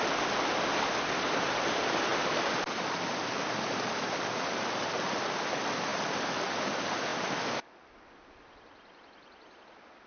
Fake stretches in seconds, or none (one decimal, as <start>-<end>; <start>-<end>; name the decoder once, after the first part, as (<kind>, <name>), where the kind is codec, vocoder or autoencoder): none